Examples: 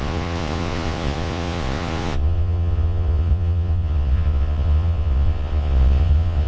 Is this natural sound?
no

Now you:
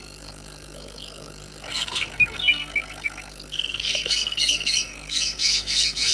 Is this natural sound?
no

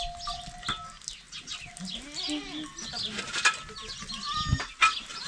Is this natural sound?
yes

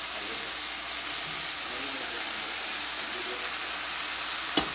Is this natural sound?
yes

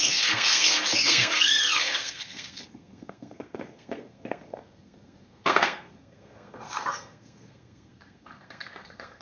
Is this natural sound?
no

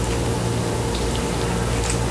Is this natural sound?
yes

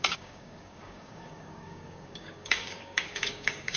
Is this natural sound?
no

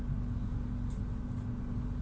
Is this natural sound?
yes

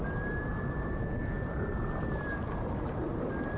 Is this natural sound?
yes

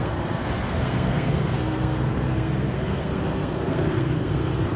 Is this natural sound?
no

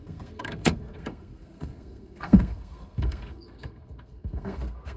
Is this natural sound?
no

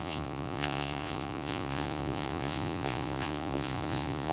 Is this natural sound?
no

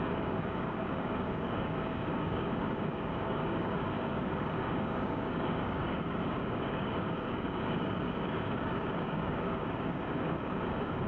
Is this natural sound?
no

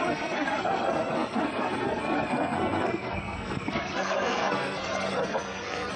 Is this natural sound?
no